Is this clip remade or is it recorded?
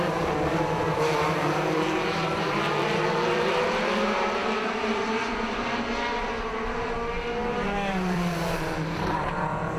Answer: remade